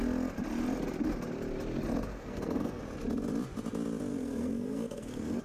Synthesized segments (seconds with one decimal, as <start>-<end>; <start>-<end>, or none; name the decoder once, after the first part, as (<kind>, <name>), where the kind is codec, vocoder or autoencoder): 2.1-2.8 (codec, SNAC); 4.1-5.4